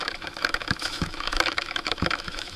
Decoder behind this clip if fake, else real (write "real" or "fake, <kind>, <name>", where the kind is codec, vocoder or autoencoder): fake, autoencoder, DAC-VAE